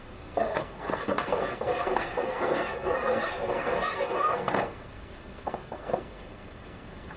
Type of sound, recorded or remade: remade